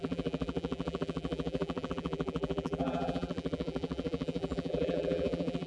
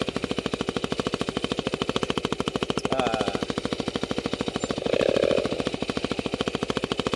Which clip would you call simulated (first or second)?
first